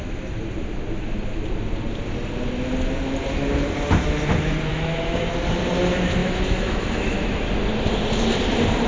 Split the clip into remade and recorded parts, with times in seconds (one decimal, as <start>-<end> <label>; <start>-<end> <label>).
0.0-4.7 recorded; 4.7-5.3 remade; 5.3-6.2 recorded; 6.2-7.5 remade; 7.5-8.9 recorded